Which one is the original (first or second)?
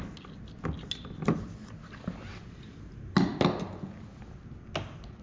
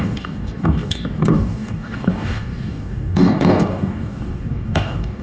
first